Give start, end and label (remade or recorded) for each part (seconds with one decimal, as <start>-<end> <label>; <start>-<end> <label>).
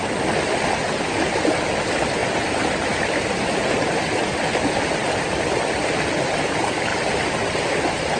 0.0-6.9 recorded; 6.9-7.7 remade; 7.7-8.2 recorded